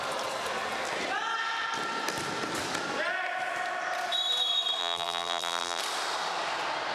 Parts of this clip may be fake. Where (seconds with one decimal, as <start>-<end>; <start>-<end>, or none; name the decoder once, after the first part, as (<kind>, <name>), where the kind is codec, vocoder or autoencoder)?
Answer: 4.8-5.8 (vocoder, BigVGAN v2)